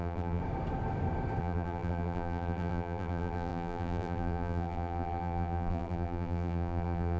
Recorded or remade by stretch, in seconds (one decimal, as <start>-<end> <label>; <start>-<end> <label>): 0.0-0.4 remade; 0.4-1.4 recorded; 1.4-7.2 remade